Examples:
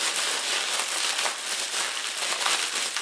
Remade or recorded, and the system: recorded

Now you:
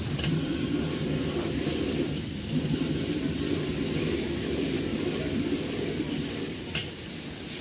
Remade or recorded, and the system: remade, vocoder, BigVGAN v2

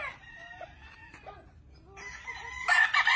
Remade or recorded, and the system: recorded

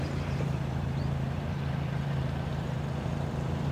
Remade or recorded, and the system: remade, vocoder, BigVGAN v2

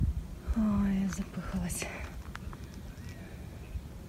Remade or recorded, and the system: recorded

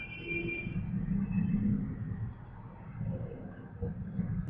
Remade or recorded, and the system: recorded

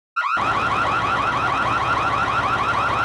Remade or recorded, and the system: recorded